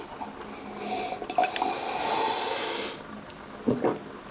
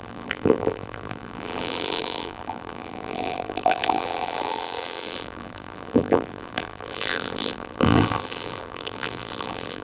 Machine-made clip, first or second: second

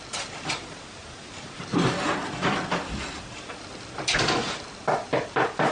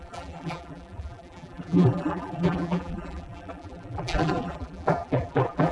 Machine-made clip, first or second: second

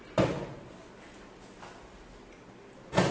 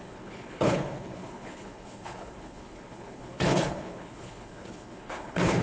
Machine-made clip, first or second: second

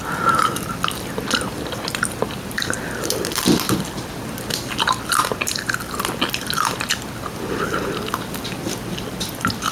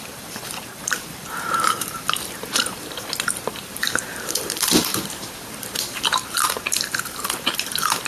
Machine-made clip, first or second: second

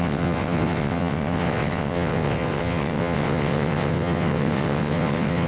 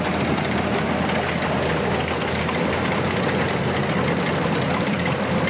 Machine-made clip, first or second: first